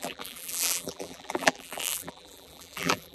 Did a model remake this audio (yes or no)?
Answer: yes